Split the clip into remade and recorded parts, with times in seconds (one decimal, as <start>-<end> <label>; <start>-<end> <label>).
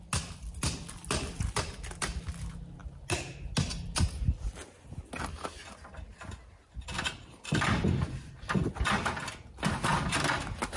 0.0-10.8 recorded